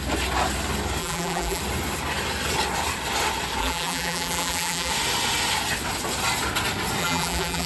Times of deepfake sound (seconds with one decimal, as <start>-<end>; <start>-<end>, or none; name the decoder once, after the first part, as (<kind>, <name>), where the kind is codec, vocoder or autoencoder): 1.0-1.6 (vocoder, BigVGAN v2); 3.6-4.9; 7.0-7.7